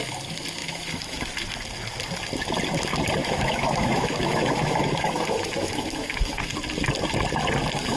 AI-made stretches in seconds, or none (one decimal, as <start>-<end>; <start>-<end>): 0.6-1.3; 3.2-6.4